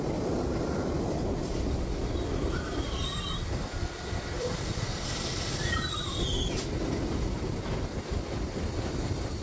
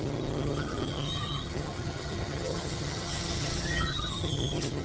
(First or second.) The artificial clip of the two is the second